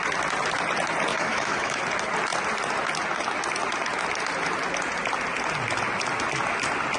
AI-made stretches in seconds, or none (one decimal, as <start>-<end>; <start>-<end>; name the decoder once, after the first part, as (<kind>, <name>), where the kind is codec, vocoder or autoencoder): 1.1-1.8 (autoencoder, DAC-VAE)